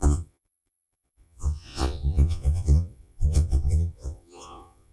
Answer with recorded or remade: remade